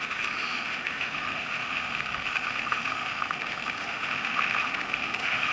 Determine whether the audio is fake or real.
fake